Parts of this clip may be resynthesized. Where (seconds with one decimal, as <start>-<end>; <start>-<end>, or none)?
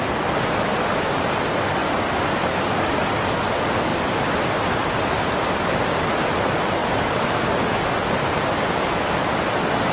none